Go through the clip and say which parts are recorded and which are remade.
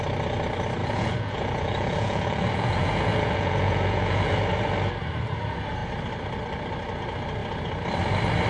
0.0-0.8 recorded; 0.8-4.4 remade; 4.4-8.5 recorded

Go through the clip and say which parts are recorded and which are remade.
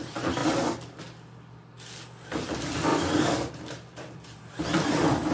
0.0-0.4 recorded; 0.4-1.0 remade; 1.0-2.9 recorded; 2.9-5.3 remade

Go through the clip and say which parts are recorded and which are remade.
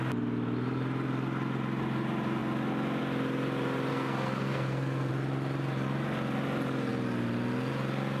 0.0-3.9 recorded; 3.9-5.1 remade; 5.1-8.2 recorded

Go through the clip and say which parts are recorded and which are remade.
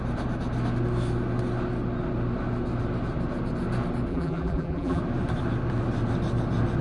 0.0-4.1 recorded; 4.1-5.0 remade; 5.0-6.8 recorded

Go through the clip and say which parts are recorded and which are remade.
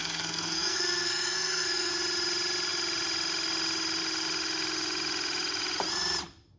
0.0-1.9 remade; 1.9-6.6 recorded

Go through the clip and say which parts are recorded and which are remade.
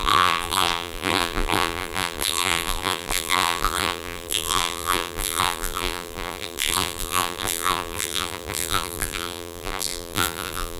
0.0-10.8 remade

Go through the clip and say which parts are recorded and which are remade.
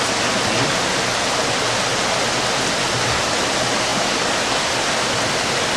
0.0-3.9 recorded; 3.9-4.9 remade; 4.9-5.8 recorded